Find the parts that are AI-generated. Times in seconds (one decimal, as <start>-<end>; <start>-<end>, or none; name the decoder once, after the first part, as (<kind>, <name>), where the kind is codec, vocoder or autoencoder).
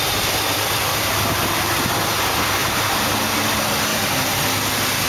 0.9-1.9 (vocoder, BigVGAN v2); 2.6-3.2; 3.9-4.4